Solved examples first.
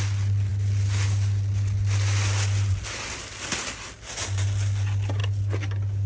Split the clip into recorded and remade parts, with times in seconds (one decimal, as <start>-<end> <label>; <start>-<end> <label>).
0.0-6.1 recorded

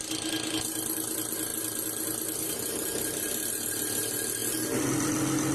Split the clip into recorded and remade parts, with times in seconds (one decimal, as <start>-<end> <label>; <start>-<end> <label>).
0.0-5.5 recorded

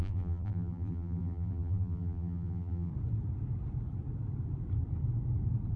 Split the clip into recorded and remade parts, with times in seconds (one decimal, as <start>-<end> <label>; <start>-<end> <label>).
0.0-2.9 remade; 2.9-5.8 recorded